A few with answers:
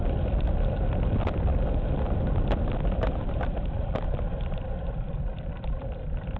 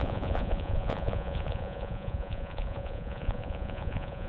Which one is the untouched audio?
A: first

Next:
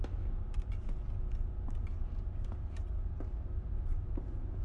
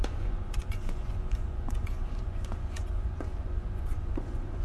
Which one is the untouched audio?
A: first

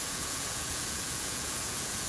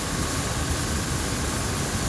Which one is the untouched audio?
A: second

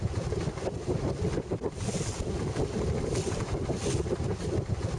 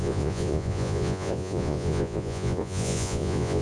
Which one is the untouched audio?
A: first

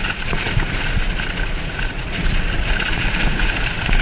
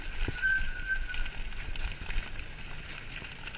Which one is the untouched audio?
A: second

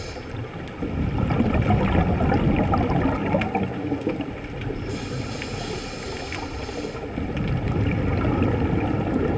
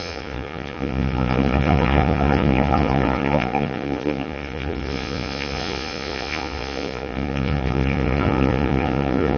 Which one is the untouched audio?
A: first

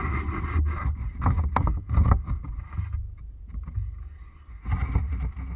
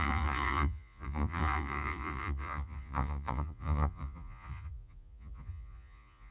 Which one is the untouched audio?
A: first